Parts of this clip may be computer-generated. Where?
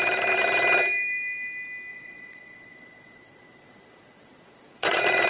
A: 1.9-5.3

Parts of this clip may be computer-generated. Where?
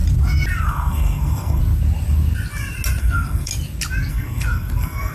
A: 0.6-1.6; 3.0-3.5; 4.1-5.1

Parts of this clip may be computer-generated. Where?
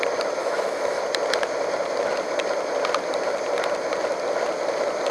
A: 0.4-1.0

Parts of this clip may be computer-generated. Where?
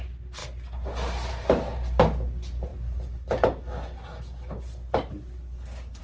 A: none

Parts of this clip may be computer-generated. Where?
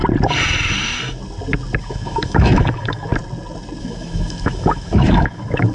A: 1.8-3.1; 3.8-5.7